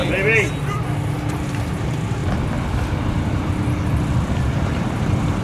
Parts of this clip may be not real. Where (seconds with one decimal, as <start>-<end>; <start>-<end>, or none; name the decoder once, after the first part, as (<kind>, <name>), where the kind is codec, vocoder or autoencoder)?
1.3-2.2 (vocoder, BigVGAN v2); 4.3-5.4

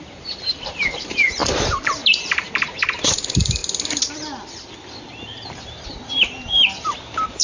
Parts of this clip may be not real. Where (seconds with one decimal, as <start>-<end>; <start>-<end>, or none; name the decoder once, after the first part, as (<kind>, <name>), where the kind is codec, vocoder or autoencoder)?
0.0-3.6 (vocoder, BigVGAN v2); 6.8-7.4

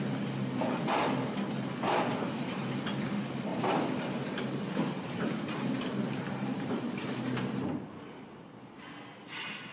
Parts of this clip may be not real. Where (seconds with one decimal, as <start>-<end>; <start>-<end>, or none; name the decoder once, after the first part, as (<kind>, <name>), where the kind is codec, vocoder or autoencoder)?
3.5-6.7 (vocoder, BigVGAN v2)

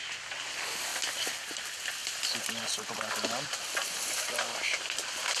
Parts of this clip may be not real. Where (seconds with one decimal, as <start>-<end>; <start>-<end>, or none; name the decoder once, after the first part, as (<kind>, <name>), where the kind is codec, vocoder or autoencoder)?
none

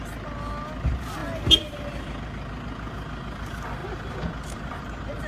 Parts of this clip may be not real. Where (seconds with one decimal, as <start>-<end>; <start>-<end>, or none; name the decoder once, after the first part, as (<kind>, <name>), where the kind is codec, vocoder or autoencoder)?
1.2-2.2 (vocoder, BigVGAN v2); 3.8-4.8

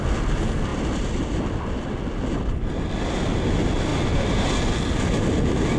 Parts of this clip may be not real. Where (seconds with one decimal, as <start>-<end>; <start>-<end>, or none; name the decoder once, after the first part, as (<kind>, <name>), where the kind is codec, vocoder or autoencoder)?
3.9-4.5 (vocoder, BigVGAN v2)

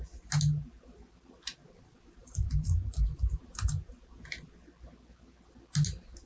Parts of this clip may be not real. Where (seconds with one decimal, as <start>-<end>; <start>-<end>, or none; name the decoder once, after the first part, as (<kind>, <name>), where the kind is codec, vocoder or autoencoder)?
2.2-3.4 (vocoder, BigVGAN v2)